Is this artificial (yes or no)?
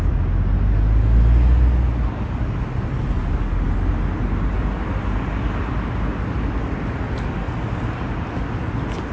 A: no